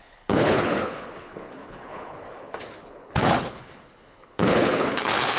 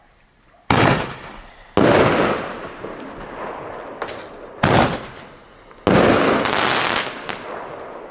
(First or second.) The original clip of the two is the second